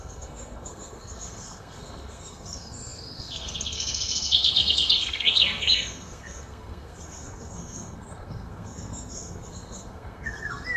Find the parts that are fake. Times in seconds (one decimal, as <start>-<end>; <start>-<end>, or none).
0.0-10.8